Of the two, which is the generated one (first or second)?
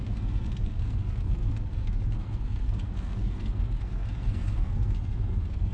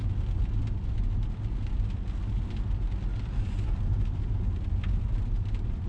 first